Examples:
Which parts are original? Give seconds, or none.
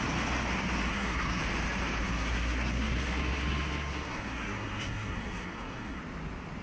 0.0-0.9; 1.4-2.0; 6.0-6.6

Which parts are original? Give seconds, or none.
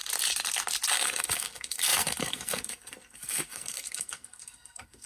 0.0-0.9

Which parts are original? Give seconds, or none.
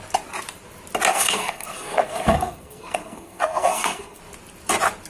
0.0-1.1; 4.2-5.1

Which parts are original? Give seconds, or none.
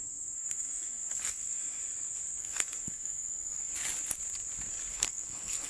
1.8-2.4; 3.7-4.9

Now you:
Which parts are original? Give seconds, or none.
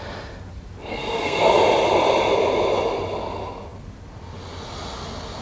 0.0-0.9; 1.5-5.4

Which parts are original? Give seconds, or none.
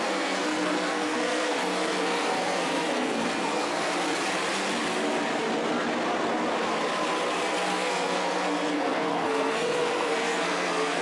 3.9-7.7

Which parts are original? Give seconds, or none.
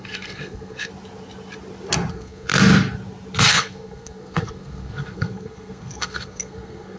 0.9-2.1; 2.5-3.5